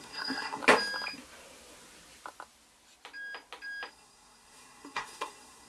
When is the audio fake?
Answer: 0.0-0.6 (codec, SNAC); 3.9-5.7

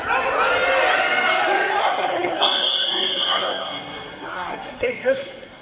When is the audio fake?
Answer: 1.8-5.6 (codec, SNAC)

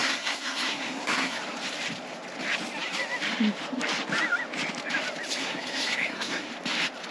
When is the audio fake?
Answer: 0.0-1.4 (codec, SNAC); 5.4-6.5

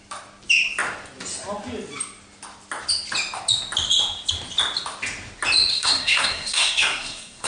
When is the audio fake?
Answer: 5.7-7.5 (codec, SNAC)

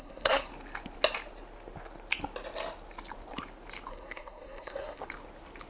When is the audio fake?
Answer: 0.0-0.5 (codec, SNAC); 3.9-5.0

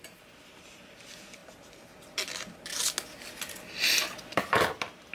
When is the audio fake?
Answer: none

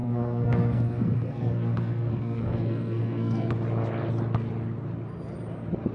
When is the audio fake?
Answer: 0.0-3.5 (codec, SNAC)